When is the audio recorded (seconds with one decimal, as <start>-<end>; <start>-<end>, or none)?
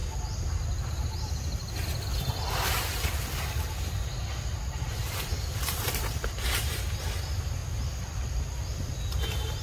0.0-0.9; 1.6-4.8; 7.6-9.2